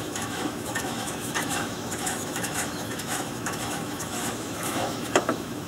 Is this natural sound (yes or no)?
no